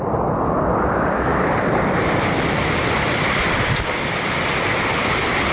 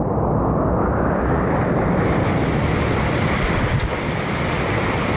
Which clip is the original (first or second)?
second